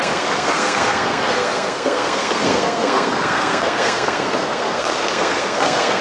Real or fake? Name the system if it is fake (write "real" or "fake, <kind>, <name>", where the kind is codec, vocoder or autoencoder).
fake, codec, SNAC